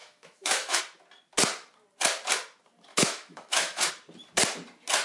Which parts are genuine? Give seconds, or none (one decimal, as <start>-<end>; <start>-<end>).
0.8-2.9; 3.9-5.0